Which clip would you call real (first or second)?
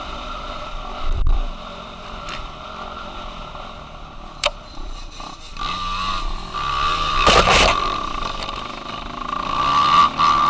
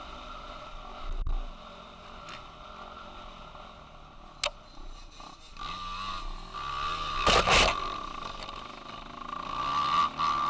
second